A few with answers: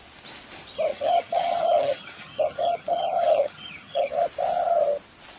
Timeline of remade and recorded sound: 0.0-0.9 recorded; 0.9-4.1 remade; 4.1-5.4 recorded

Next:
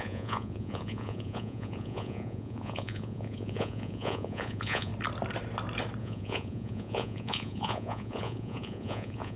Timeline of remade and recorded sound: 0.0-4.9 remade; 4.9-6.0 recorded; 6.0-9.4 remade

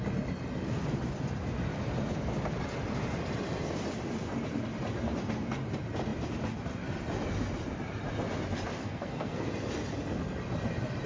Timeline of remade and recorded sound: 0.0-8.8 recorded; 8.8-9.5 remade; 9.5-11.1 recorded

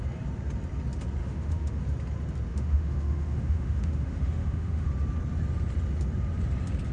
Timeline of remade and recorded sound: 0.0-1.2 recorded; 1.2-1.8 remade; 1.8-2.5 recorded; 2.5-4.9 remade; 4.9-6.9 recorded

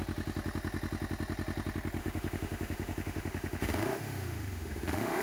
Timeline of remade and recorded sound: 0.0-2.0 recorded; 2.0-5.2 remade

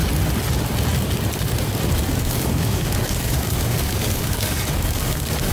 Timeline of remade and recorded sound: 0.0-2.2 recorded; 2.2-5.5 remade

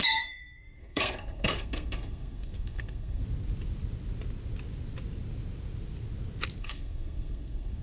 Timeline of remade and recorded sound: 0.0-3.2 remade; 3.2-6.6 recorded; 6.6-7.8 remade

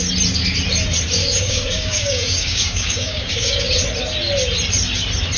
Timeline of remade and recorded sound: 0.0-1.2 recorded; 1.2-3.7 remade; 3.7-5.4 recorded